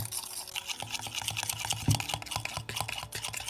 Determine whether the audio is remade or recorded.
recorded